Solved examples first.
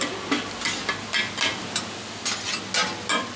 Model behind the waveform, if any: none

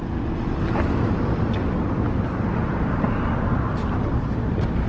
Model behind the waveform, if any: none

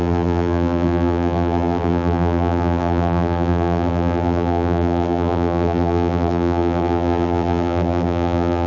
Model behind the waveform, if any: vocoder, BigVGAN v2